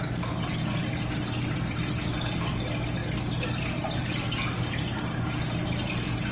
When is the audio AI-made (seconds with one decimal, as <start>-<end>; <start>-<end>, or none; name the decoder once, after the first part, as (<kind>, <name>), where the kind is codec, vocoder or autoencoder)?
none